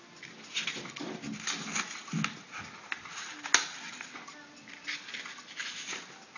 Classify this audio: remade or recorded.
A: recorded